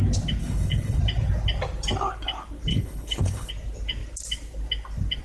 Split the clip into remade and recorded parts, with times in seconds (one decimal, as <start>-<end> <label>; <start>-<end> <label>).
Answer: 0.0-0.4 recorded; 0.4-1.0 remade; 1.0-2.7 recorded; 2.7-3.5 remade; 3.5-5.2 recorded